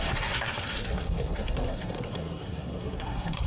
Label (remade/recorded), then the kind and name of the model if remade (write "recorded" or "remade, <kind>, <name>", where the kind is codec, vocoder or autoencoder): remade, codec, SNAC